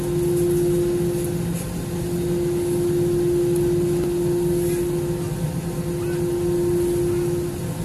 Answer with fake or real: real